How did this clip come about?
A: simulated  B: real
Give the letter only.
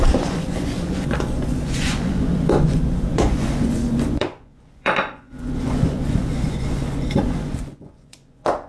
A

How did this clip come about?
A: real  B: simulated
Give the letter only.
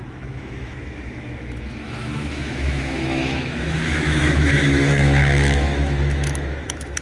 B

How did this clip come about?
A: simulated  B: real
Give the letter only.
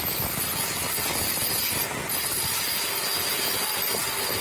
B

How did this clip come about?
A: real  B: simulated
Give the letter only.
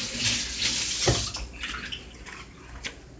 A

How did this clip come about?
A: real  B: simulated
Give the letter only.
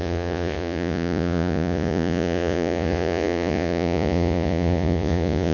B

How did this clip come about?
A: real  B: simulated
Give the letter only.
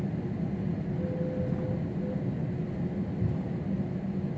A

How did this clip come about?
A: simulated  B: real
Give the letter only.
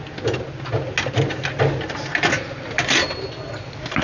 B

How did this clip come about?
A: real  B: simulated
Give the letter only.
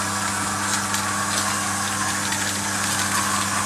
A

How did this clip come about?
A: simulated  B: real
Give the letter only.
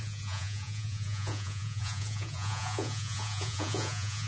A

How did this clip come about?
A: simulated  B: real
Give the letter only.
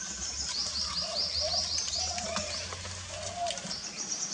A